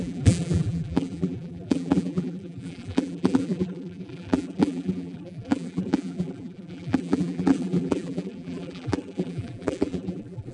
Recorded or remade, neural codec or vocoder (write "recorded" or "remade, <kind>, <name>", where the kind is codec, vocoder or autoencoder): remade, vocoder, BigVGAN v2